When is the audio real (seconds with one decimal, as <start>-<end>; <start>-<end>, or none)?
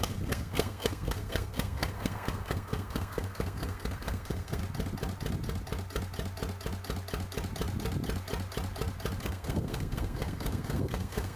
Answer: 4.6-9.2